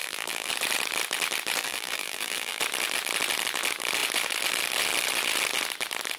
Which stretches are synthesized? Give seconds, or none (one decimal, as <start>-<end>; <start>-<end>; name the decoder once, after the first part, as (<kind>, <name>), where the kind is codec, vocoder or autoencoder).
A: 0.0-0.5 (vocoder, BigVGAN v2); 1.6-2.6